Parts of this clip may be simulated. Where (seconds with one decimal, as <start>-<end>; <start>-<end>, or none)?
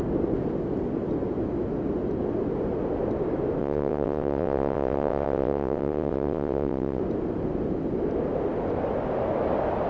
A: 3.6-7.0